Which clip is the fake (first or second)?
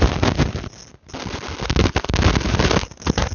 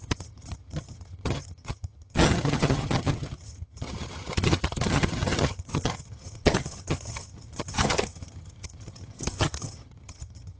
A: second